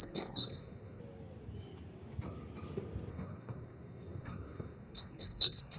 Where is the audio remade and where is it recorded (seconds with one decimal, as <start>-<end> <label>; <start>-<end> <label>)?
0.0-1.0 remade; 1.0-3.1 recorded; 3.1-5.8 remade